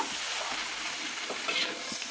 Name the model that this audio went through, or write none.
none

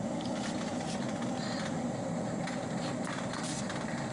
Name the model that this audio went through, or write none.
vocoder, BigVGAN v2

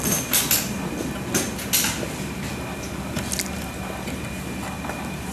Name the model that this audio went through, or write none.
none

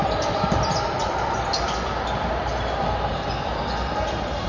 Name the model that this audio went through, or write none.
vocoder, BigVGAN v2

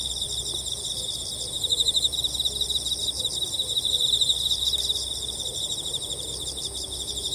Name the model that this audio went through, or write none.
none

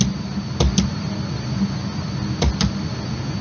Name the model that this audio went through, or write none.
none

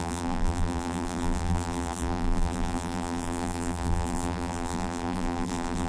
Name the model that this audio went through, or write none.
vocoder, BigVGAN v2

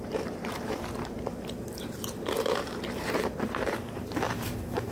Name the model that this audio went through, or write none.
vocoder, BigVGAN v2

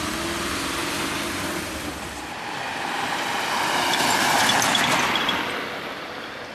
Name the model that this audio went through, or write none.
vocoder, BigVGAN v2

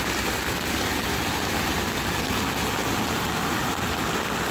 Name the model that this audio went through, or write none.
none